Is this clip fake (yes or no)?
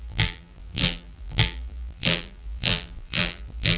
yes